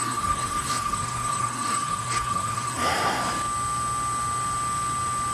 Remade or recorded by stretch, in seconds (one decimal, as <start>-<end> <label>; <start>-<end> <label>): 0.0-3.2 remade; 3.2-5.3 recorded